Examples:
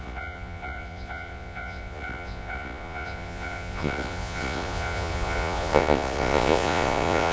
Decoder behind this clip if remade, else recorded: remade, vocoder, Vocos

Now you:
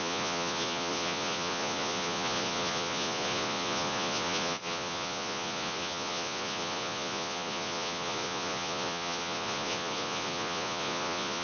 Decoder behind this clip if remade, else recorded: remade, vocoder, Vocos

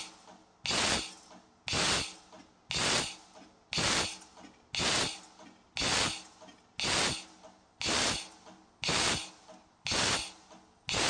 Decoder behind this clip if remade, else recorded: recorded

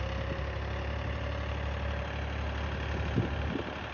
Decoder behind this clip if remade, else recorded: recorded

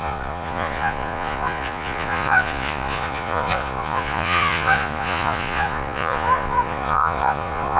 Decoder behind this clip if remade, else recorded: remade, vocoder, Vocos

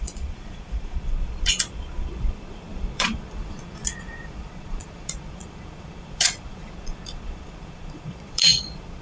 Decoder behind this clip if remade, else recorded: remade, vocoder, Vocos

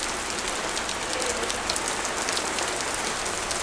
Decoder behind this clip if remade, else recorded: recorded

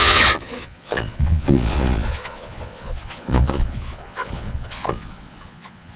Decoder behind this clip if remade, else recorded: remade, vocoder, Vocos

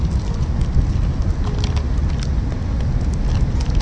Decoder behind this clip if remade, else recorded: recorded